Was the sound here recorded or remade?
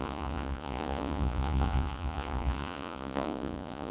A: remade